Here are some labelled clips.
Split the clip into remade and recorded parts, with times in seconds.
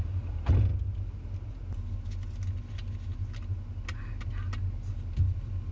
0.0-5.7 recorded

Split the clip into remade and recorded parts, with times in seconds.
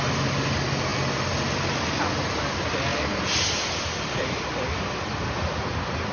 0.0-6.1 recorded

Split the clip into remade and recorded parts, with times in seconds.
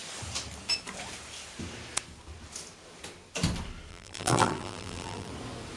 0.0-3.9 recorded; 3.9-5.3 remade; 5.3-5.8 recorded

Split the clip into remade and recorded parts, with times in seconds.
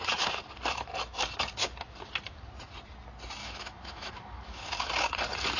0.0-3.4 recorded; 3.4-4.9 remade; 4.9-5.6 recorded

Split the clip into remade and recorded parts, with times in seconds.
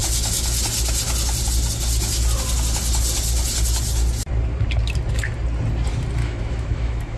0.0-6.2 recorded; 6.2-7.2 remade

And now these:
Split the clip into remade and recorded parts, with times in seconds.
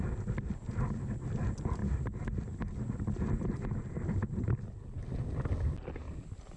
0.0-6.6 recorded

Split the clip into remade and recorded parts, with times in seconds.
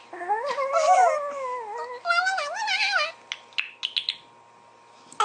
0.0-5.2 recorded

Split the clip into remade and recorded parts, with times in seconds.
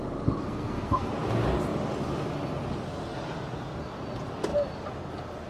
0.0-0.4 recorded; 0.4-1.1 remade; 1.1-5.5 recorded